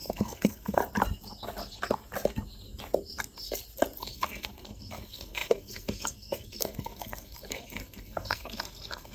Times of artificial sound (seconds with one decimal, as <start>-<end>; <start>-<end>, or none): 0.0-0.8; 4.0-9.1